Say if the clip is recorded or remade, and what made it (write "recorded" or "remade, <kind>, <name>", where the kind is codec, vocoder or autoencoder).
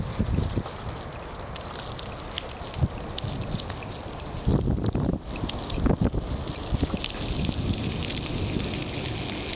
recorded